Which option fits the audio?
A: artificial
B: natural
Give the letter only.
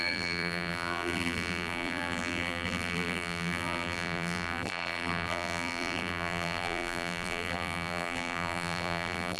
A